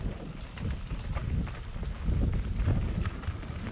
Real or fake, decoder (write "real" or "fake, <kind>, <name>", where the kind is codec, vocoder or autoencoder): real